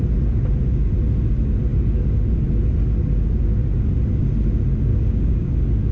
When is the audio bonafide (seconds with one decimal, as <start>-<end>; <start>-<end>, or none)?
0.0-4.9; 5.5-5.9